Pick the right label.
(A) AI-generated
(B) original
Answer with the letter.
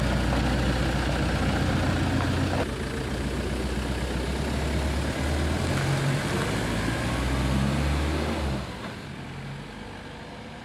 B